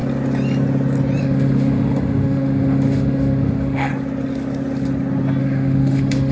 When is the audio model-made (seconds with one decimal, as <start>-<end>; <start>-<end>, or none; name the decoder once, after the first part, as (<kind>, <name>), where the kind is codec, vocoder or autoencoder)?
1.2-3.9 (autoencoder, DAC-VAE); 5.4-6.3